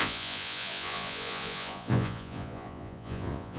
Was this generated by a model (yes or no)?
yes